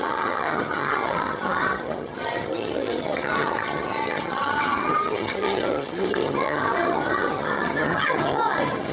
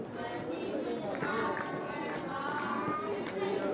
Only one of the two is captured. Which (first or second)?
second